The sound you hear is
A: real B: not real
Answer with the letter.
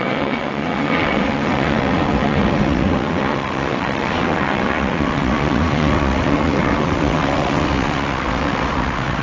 B